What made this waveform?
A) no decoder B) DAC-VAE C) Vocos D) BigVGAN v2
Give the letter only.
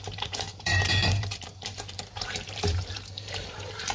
D